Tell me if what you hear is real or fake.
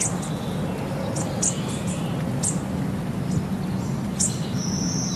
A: real